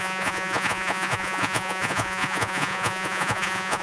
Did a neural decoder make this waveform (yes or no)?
yes